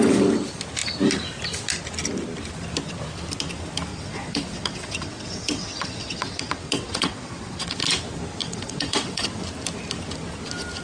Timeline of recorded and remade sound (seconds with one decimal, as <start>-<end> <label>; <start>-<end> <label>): 0.0-3.9 recorded; 3.9-7.8 remade; 7.8-8.4 recorded; 8.4-9.4 remade; 9.4-10.8 recorded